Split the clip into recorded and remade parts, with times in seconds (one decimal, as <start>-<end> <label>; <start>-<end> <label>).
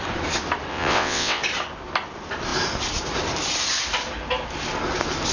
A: 0.0-0.7 recorded; 0.7-1.4 remade; 1.4-5.3 recorded